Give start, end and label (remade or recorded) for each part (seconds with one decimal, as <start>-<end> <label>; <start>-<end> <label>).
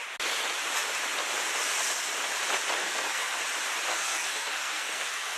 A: 0.0-2.8 recorded; 2.8-3.4 remade; 3.4-3.9 recorded; 3.9-5.4 remade